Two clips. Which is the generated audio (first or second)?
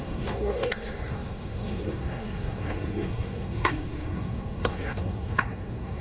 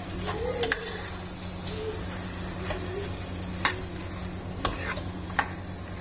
first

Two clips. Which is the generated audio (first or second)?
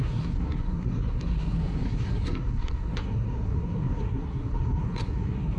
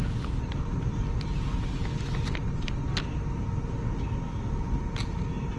first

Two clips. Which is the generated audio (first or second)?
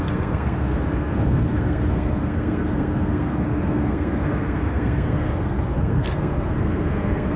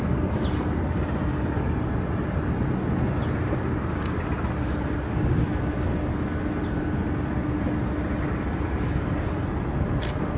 first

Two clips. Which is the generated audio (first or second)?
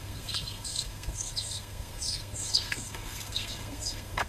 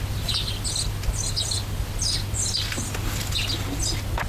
first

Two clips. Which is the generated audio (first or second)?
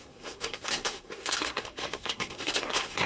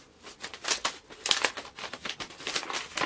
first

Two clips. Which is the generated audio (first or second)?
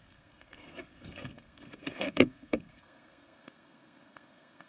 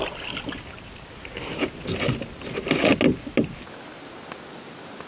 first